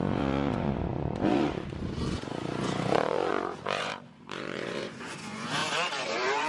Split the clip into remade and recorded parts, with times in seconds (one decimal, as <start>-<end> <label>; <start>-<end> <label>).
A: 0.0-6.5 remade